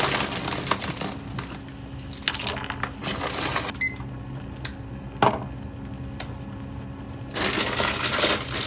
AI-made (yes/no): no